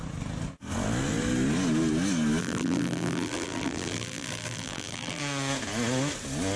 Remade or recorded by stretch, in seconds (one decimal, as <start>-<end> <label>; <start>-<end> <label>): 0.0-2.4 recorded; 2.4-5.2 remade; 5.2-6.6 recorded